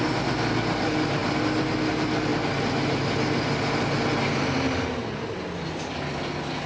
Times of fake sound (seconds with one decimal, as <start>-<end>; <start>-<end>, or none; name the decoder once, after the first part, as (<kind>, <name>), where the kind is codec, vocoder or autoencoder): none